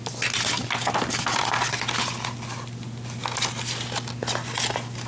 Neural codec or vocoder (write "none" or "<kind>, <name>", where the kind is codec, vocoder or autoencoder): none